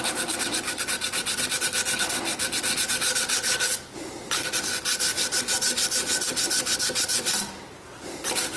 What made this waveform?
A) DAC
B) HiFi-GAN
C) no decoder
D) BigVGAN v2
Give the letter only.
D